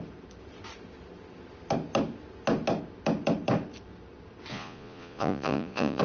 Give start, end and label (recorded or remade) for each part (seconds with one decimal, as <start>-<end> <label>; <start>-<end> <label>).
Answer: 0.0-4.5 recorded; 4.5-6.0 remade